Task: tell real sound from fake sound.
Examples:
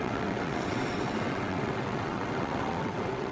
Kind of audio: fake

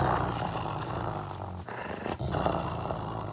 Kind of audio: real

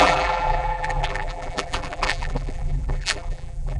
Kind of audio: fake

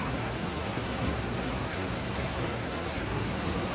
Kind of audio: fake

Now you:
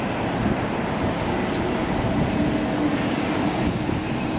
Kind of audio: real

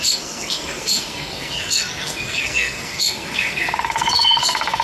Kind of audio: fake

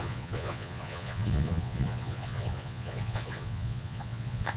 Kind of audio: fake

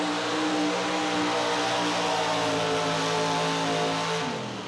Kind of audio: real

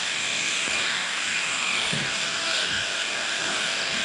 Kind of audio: fake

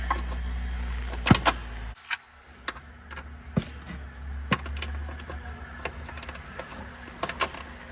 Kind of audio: real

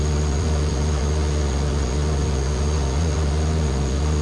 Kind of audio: fake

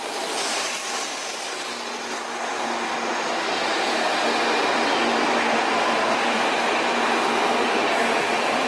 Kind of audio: real